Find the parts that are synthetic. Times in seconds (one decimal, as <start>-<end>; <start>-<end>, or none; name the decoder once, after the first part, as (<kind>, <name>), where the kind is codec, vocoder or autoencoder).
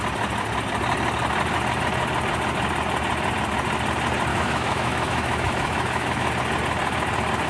4.3-6.3 (autoencoder, DAC-VAE)